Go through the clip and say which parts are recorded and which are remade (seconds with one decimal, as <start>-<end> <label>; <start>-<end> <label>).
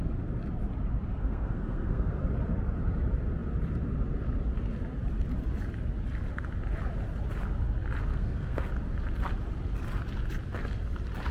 0.0-1.1 recorded; 1.1-2.2 remade; 2.2-8.1 recorded; 8.1-8.7 remade; 8.7-11.3 recorded